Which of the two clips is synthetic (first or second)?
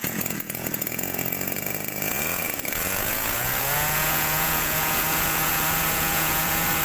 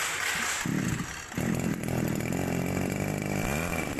first